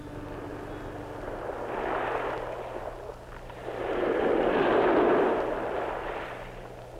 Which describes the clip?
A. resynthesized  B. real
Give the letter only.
B